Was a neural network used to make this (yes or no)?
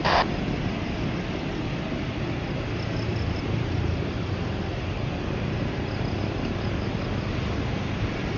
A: no